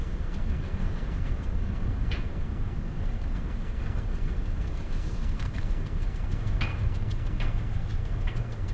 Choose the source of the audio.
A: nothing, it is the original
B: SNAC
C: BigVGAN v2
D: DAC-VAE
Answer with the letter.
B